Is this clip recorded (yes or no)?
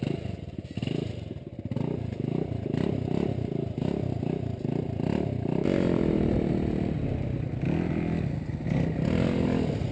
yes